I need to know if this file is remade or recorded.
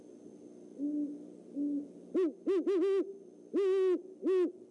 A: recorded